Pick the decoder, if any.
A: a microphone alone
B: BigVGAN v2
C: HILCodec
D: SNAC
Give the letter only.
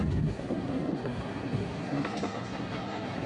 D